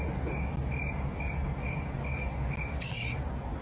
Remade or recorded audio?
recorded